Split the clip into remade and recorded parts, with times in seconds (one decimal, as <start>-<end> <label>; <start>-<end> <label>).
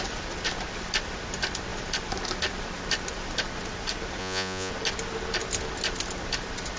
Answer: 0.0-4.2 recorded; 4.2-4.7 remade; 4.7-6.8 recorded